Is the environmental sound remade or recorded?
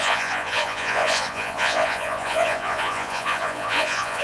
remade